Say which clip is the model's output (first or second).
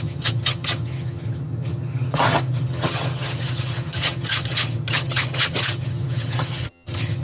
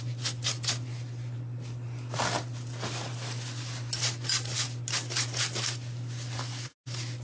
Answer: first